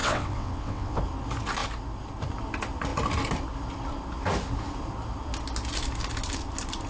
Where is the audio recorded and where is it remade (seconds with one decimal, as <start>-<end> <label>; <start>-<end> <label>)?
0.0-1.0 remade; 1.0-6.9 recorded